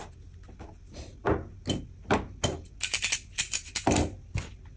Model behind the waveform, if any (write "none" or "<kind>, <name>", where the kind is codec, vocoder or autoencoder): none